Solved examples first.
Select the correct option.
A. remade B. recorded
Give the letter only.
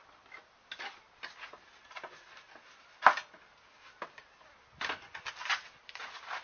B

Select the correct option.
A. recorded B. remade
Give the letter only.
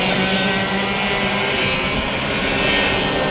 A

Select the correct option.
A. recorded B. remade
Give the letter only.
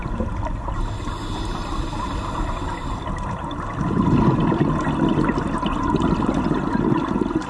A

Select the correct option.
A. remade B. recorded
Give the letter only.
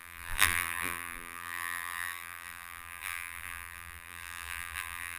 A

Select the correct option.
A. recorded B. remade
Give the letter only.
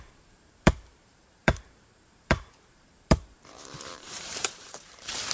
B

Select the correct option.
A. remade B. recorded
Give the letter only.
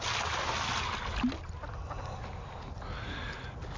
B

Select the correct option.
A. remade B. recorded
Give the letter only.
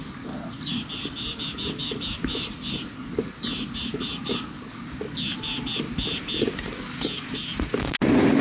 B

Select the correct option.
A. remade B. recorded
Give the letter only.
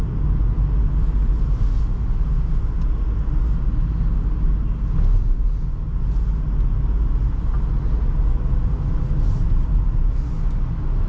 B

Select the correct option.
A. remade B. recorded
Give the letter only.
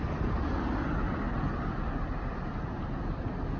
B